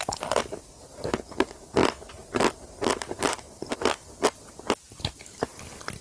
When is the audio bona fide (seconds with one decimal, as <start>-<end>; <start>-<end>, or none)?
0.0-6.0